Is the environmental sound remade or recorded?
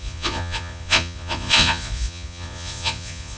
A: remade